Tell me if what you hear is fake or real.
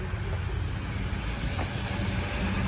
real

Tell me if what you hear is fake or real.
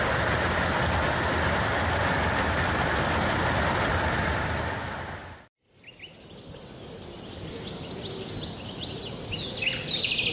real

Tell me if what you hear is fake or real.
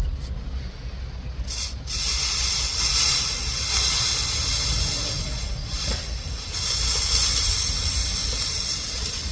real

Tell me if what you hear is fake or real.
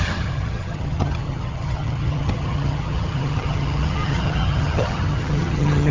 fake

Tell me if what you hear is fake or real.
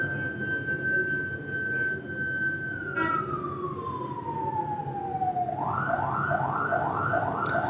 real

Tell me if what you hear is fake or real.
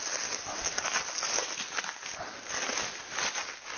real